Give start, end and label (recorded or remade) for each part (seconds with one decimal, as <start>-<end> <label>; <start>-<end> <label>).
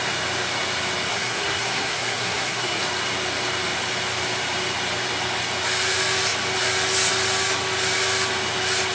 0.0-1.1 recorded; 1.1-2.8 remade; 2.8-8.9 recorded